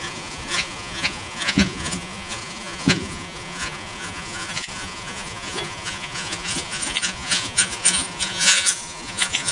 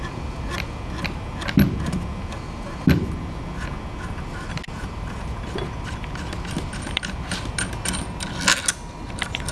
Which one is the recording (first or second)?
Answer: second